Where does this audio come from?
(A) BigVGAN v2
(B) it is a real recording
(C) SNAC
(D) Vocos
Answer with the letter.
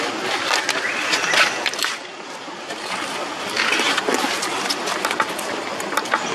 B